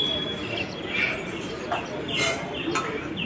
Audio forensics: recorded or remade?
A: recorded